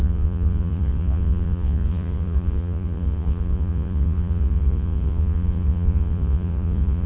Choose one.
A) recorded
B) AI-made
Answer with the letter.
B